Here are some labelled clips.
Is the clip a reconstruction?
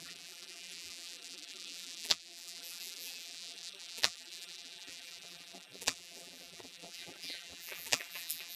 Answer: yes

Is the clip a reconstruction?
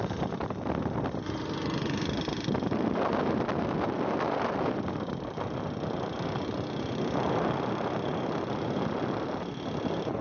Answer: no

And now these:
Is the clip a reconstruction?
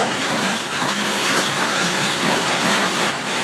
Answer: yes